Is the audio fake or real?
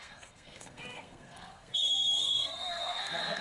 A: fake